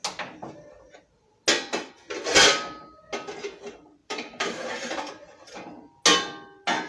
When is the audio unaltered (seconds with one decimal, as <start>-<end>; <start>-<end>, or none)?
0.0-4.0; 6.0-6.9